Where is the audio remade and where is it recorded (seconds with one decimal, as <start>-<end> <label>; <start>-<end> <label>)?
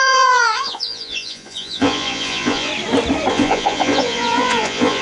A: 0.0-2.7 remade; 2.7-3.3 recorded; 3.3-5.0 remade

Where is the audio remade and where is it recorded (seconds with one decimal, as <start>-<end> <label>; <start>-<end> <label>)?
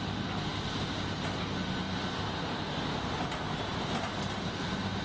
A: 0.0-5.0 recorded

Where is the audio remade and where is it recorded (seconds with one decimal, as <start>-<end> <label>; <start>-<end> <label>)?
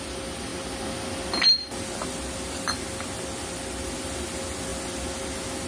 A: 0.0-5.7 recorded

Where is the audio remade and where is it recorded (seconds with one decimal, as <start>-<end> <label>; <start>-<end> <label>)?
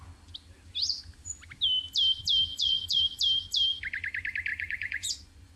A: 0.0-2.5 recorded; 2.5-3.0 remade; 3.0-4.5 recorded; 4.5-5.6 remade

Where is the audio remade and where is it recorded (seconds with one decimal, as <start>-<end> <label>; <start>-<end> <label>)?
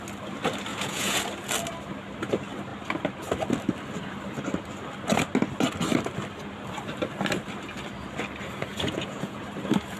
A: 0.0-0.7 recorded; 0.7-1.2 remade; 1.2-8.7 recorded; 8.7-9.4 remade; 9.4-10.0 recorded